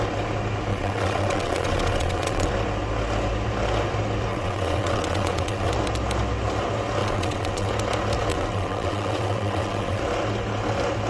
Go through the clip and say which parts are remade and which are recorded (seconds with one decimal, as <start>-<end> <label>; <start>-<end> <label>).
0.0-0.7 recorded; 0.7-2.5 remade; 2.5-4.3 recorded; 4.3-5.7 remade; 5.7-7.0 recorded; 7.0-7.7 remade; 7.7-8.3 recorded; 8.3-10.0 remade; 10.0-11.1 recorded